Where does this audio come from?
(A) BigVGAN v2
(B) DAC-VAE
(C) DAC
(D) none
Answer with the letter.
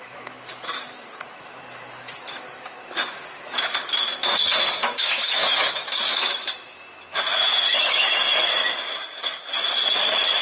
B